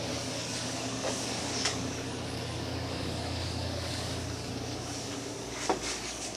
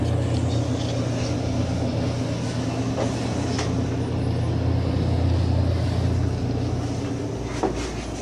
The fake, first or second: first